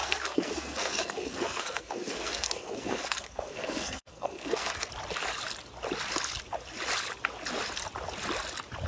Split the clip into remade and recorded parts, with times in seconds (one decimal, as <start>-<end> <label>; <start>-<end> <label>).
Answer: 0.0-4.9 remade; 4.9-8.9 recorded